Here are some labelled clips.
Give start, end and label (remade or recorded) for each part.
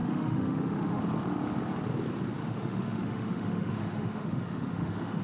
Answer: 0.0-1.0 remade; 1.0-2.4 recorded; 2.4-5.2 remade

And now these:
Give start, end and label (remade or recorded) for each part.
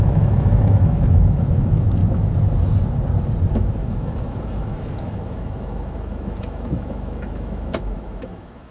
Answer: 0.0-2.0 remade; 2.0-3.5 recorded; 3.5-8.7 remade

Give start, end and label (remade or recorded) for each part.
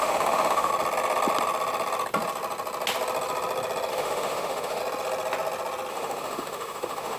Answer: 0.0-0.7 remade; 0.7-3.9 recorded; 3.9-4.8 remade; 4.8-5.9 recorded; 5.9-7.2 remade